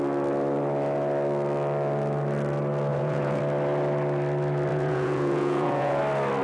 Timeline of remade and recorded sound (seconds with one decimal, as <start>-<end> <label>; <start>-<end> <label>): 0.0-2.9 recorded; 2.9-3.4 remade; 3.4-4.7 recorded; 4.7-6.0 remade; 6.0-6.4 recorded